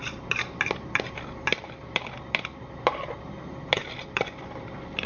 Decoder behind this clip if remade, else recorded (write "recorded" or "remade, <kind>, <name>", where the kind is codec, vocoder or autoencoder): remade, vocoder, BigVGAN v2